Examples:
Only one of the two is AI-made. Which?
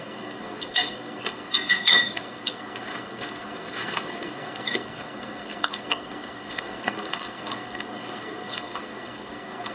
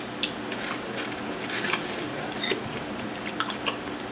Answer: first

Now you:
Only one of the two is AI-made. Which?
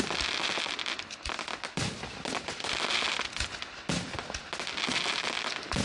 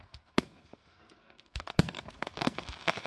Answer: second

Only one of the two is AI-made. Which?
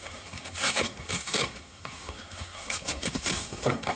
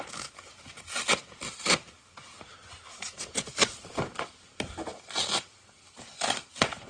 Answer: first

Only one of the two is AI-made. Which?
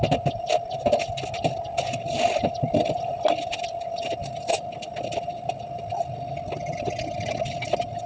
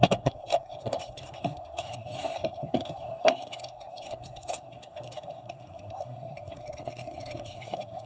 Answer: second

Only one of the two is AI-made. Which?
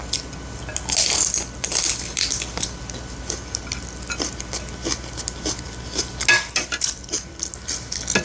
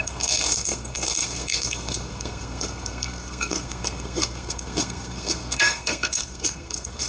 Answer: second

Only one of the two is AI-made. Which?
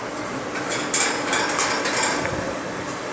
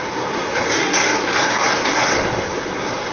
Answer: second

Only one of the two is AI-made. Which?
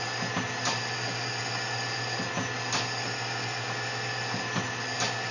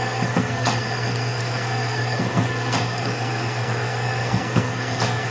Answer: second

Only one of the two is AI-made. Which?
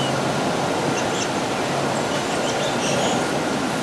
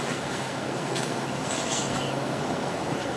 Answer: second